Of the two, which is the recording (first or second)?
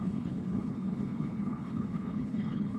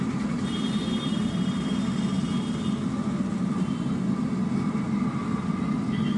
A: second